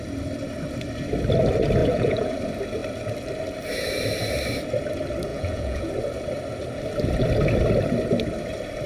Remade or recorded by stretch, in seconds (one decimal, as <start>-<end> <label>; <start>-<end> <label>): 0.0-1.8 recorded; 1.8-2.4 remade; 2.4-5.3 recorded; 5.3-5.9 remade; 5.9-8.9 recorded